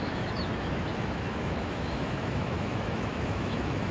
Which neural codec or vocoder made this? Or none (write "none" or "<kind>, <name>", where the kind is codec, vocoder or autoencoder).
autoencoder, DAC-VAE